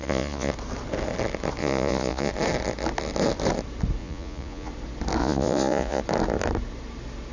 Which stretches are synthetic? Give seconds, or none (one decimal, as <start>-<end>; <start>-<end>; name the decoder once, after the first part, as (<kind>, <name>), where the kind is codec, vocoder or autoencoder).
0.0-0.5 (vocoder, Vocos); 1.6-2.3; 4.0-4.7; 5.2-6.0